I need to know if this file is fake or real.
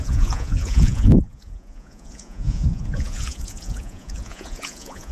fake